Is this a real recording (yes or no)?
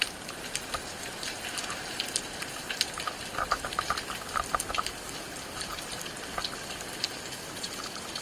yes